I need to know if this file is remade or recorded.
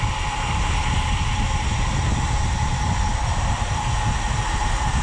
recorded